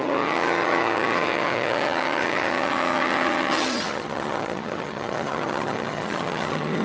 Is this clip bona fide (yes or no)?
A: no